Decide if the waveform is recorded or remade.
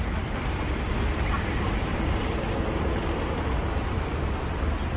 recorded